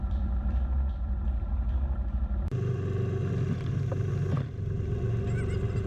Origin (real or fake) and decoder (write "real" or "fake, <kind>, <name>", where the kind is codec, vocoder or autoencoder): real